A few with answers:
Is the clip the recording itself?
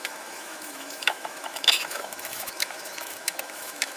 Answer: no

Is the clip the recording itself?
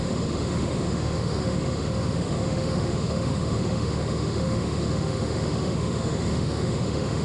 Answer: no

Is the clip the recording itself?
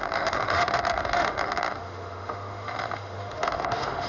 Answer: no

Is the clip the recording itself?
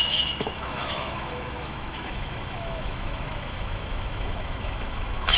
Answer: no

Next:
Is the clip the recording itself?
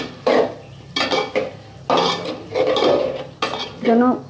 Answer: yes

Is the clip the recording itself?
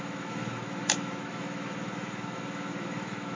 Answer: no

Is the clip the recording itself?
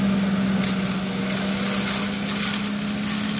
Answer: yes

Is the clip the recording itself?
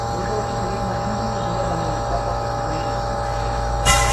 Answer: no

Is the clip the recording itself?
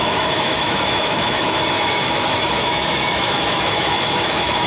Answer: no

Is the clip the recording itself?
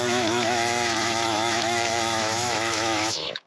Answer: no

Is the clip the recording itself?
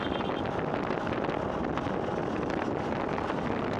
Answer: yes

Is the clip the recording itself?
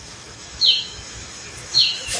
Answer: no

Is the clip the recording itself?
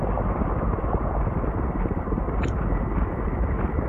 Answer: yes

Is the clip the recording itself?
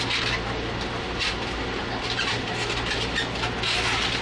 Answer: yes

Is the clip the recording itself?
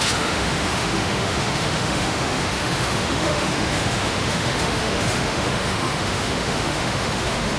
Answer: no